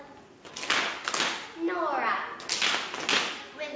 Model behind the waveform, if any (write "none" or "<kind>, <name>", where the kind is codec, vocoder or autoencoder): none